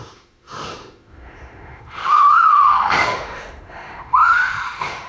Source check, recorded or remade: remade